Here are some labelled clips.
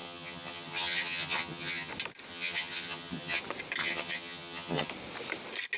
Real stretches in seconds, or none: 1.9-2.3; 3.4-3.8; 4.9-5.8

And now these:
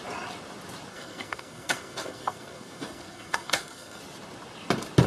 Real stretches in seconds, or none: 0.0-0.9; 4.0-5.1

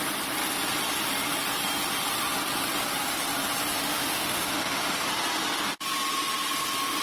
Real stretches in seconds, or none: 0.0-3.8; 5.1-7.0

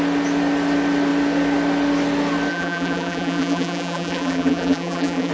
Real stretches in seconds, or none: 0.0-2.5

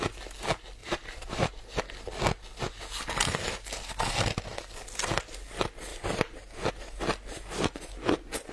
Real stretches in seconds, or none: 0.0-0.8; 1.5-5.9; 6.7-8.5

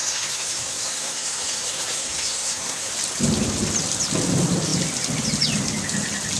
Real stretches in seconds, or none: 2.9-6.4

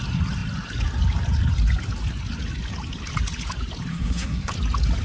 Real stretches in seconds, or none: 0.0-3.9; 4.5-5.0